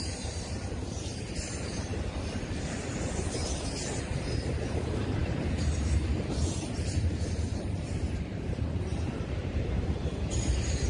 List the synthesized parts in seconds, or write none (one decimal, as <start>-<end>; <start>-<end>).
0.0-1.9; 2.6-10.9